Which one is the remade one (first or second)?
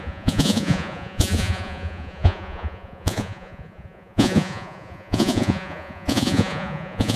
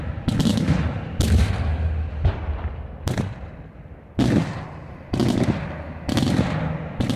first